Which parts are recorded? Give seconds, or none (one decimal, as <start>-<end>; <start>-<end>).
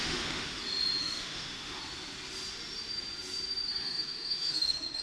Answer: 0.6-1.0; 1.8-3.8